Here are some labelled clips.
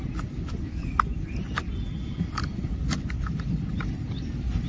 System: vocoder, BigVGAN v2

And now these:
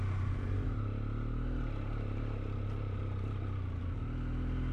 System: none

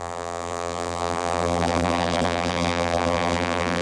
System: vocoder, BigVGAN v2